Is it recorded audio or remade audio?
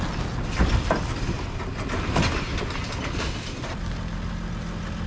recorded